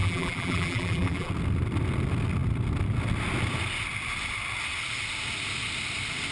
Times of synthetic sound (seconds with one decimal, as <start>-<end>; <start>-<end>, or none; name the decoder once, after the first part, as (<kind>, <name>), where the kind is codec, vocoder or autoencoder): 0.0-1.3 (vocoder, BigVGAN v2)